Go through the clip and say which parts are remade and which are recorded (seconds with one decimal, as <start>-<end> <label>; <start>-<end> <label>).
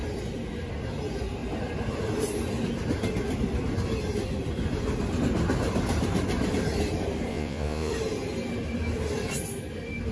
0.0-7.3 recorded; 7.3-7.9 remade; 7.9-10.1 recorded